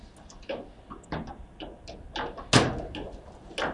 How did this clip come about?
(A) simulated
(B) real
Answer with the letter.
B